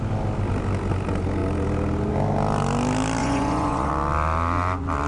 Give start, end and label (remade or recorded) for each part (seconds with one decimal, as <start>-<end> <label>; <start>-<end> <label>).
0.0-3.2 recorded; 3.2-3.9 remade; 3.9-5.1 recorded